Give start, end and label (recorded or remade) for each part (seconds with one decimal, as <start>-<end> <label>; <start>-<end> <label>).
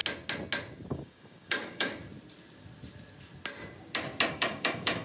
0.0-0.9 recorded; 0.9-2.0 remade; 2.0-4.3 recorded; 4.3-5.0 remade